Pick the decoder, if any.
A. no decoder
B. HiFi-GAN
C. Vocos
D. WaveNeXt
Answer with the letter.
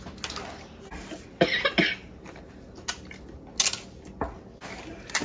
A